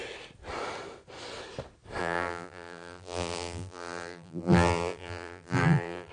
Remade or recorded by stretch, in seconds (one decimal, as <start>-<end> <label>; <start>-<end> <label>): 0.0-2.0 recorded; 2.0-6.1 remade